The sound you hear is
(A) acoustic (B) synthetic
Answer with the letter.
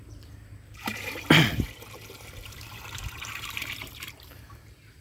B